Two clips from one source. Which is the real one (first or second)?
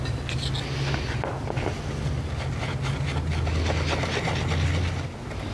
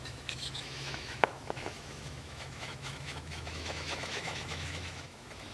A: first